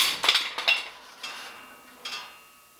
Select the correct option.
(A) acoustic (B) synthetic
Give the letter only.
A